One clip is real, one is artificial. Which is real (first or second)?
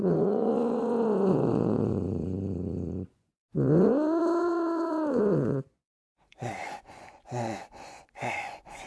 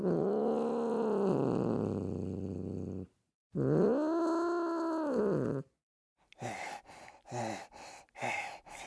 second